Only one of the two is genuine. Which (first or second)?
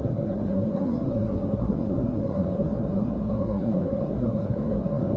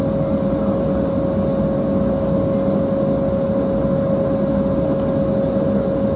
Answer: second